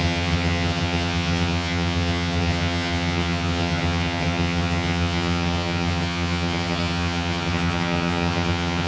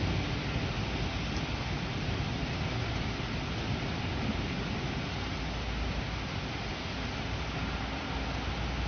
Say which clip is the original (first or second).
second